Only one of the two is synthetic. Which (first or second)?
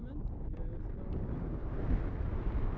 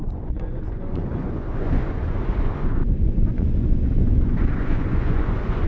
second